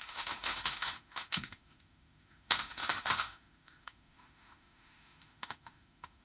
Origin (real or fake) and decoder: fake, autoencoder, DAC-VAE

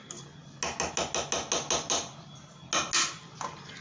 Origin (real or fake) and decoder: real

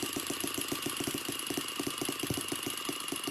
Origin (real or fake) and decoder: real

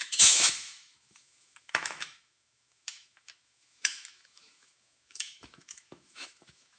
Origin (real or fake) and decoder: fake, autoencoder, DAC-VAE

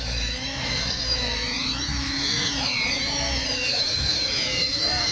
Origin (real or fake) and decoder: fake, autoencoder, DAC-VAE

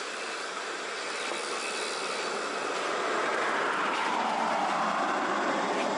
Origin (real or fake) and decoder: real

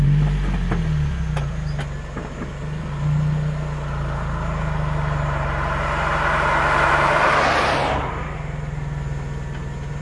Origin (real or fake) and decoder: real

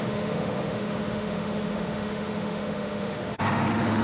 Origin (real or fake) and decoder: fake, autoencoder, DAC-VAE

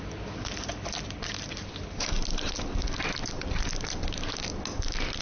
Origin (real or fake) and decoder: real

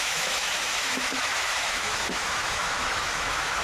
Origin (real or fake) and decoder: fake, autoencoder, DAC-VAE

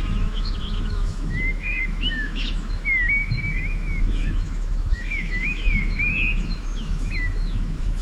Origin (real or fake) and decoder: fake, autoencoder, DAC-VAE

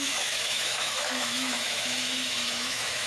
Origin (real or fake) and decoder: fake, autoencoder, DAC-VAE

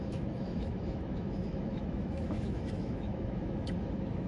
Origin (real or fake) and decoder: fake, autoencoder, DAC-VAE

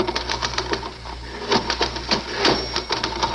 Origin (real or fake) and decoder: real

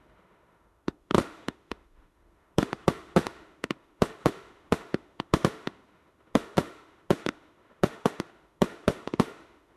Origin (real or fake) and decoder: fake, autoencoder, DAC-VAE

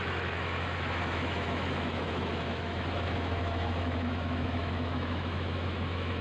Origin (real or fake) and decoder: fake, autoencoder, DAC-VAE